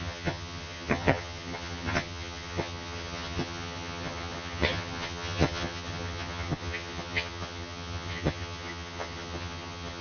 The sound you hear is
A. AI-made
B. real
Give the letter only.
A